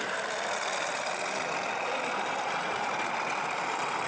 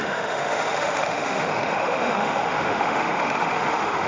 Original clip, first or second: first